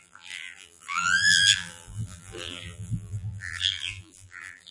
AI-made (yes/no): yes